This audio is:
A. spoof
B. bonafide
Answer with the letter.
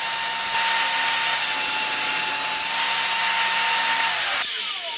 B